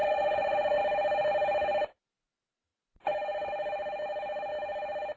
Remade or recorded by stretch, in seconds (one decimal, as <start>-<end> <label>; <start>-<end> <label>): 0.0-0.8 remade; 0.8-5.2 recorded